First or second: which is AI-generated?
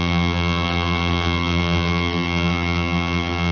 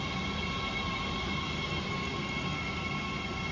first